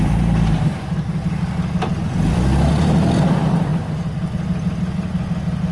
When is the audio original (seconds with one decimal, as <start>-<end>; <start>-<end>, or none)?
none